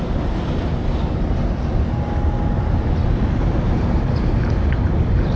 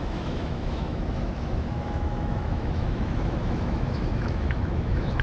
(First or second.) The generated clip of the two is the second